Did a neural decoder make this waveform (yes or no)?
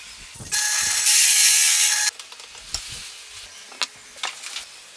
no